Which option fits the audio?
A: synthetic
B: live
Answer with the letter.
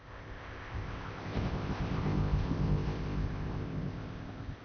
A